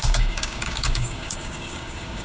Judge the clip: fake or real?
fake